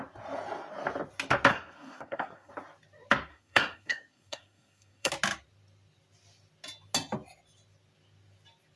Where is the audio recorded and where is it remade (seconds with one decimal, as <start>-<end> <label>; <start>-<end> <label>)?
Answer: 0.0-1.5 recorded; 1.5-2.5 remade; 2.5-3.3 recorded; 3.3-5.1 remade; 5.1-8.8 recorded